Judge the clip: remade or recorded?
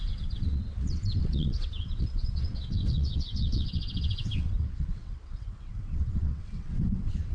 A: remade